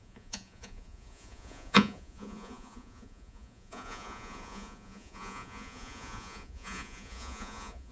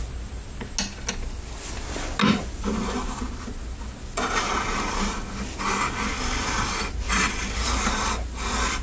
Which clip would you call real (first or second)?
second